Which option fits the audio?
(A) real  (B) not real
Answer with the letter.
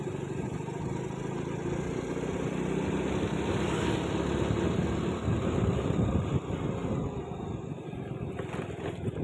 A